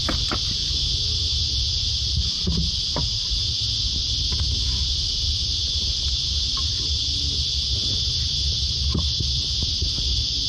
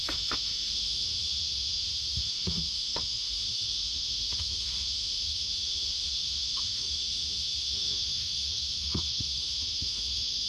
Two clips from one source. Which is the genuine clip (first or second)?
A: first